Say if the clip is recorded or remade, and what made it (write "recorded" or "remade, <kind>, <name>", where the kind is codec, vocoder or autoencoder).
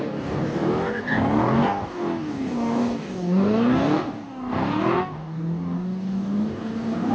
remade, codec, DAC